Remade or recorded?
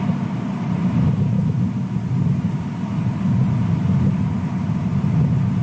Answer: recorded